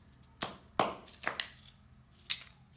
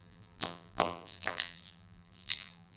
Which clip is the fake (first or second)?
second